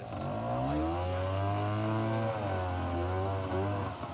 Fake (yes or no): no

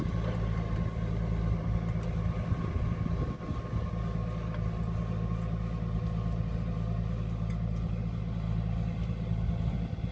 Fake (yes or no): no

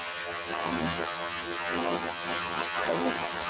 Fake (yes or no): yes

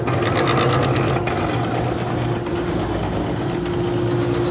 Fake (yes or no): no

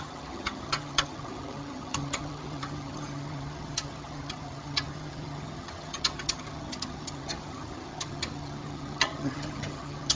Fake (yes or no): yes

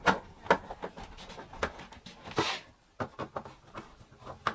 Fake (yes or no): no